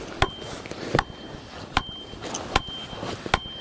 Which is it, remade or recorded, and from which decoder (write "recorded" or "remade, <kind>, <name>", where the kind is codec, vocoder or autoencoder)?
recorded